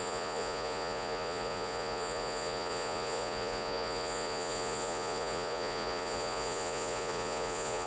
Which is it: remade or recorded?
remade